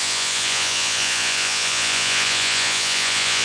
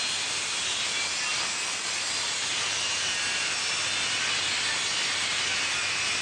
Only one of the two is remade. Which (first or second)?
first